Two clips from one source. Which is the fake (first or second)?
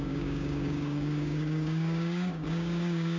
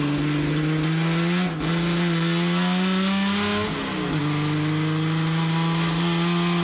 first